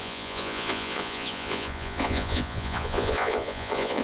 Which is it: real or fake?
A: fake